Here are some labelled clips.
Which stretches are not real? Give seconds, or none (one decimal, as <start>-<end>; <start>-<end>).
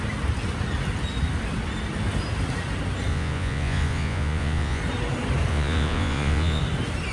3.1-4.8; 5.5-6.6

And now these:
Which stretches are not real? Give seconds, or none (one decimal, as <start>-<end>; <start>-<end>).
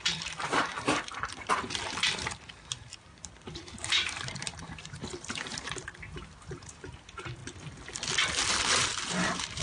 0.0-7.4; 8.5-9.6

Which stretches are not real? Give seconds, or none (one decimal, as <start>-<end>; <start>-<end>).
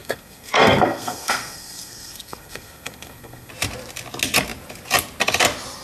0.0-3.5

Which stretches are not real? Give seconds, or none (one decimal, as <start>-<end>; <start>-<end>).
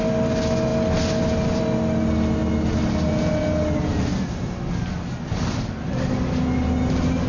none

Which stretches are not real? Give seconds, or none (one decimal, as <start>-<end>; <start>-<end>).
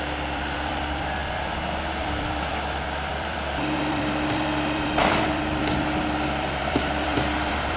0.0-7.8